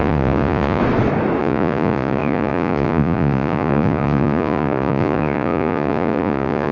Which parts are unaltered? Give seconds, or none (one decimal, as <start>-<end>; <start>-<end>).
0.8-1.4